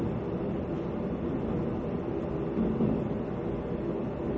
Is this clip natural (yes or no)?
yes